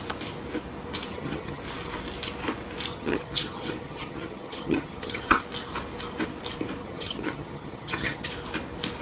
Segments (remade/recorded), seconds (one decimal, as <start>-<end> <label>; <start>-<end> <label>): 0.0-1.1 recorded; 1.1-1.6 remade; 1.6-2.9 recorded; 2.9-5.4 remade; 5.4-6.8 recorded; 6.8-8.3 remade; 8.3-9.0 recorded